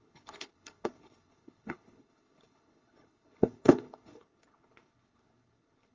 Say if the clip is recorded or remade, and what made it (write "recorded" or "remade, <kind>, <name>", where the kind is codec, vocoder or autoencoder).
remade, codec, HILCodec